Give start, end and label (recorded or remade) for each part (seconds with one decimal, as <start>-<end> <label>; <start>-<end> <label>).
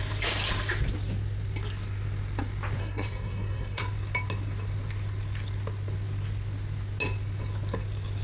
0.0-2.8 recorded; 2.8-3.8 remade; 3.8-8.2 recorded